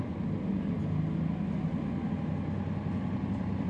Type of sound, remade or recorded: recorded